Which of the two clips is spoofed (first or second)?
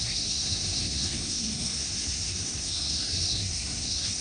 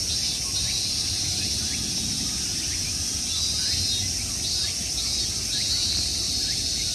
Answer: first